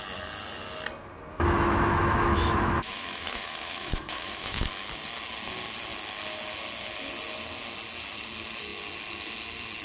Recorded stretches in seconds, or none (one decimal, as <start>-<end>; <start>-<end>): 0.0-1.3; 4.6-9.8